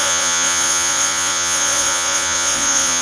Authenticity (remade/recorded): remade